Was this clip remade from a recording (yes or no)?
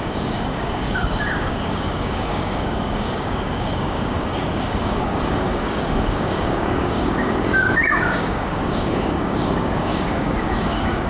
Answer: yes